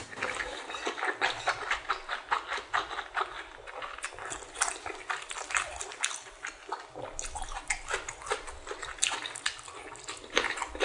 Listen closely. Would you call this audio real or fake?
real